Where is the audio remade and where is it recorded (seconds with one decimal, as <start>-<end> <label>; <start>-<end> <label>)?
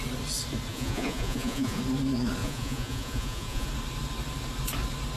0.0-0.7 recorded; 0.7-1.8 remade; 1.8-2.4 recorded; 2.4-3.7 remade; 3.7-5.2 recorded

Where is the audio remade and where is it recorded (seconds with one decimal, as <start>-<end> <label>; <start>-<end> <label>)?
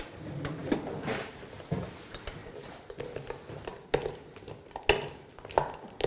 0.0-6.1 recorded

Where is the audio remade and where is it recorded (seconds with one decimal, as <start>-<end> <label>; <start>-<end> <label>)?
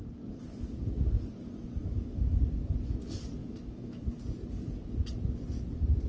0.0-1.8 recorded; 1.8-2.4 remade; 2.4-3.4 recorded; 3.4-4.1 remade; 4.1-6.1 recorded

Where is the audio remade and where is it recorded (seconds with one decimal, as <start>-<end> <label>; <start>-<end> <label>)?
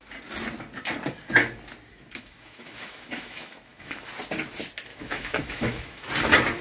0.0-1.9 recorded; 1.9-4.1 remade; 4.1-4.9 recorded; 4.9-6.1 remade; 6.1-6.6 recorded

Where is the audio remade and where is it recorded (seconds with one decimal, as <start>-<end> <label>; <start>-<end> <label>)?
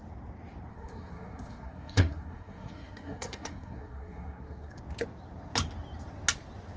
0.0-0.7 recorded; 0.7-4.8 remade; 4.8-6.8 recorded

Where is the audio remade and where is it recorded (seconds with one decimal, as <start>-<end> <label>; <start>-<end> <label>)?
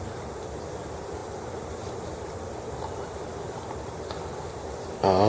0.0-5.3 recorded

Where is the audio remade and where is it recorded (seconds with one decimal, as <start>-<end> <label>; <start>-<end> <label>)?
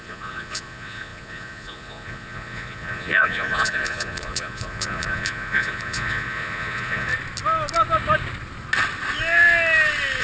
0.0-7.1 remade; 7.1-10.2 recorded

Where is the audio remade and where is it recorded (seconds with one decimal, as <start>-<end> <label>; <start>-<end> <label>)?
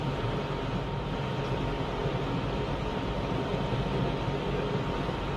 0.0-3.5 remade; 3.5-4.0 recorded; 4.0-5.4 remade